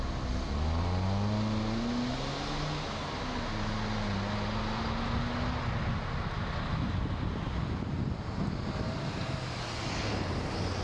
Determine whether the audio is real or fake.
real